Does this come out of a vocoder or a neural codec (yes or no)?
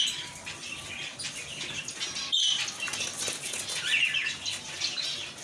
no